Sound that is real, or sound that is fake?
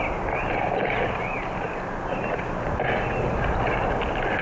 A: real